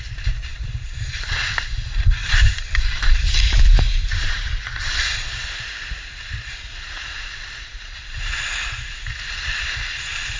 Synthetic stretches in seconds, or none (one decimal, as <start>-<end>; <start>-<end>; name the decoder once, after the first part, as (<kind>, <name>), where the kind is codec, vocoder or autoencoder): 2.2-4.5 (vocoder, BigVGAN v2)